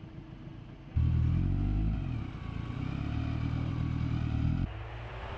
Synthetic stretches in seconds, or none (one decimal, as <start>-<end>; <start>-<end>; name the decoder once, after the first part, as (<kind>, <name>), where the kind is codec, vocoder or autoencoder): none